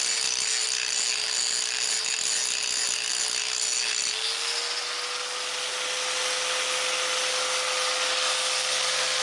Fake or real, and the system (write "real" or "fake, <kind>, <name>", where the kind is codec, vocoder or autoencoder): real